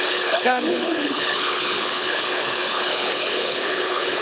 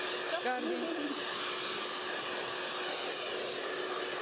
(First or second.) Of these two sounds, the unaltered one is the second